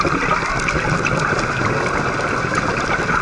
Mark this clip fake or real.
real